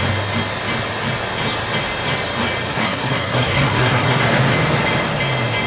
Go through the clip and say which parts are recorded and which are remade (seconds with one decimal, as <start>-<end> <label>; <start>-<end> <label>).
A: 0.0-2.7 recorded; 2.7-4.2 remade; 4.2-5.7 recorded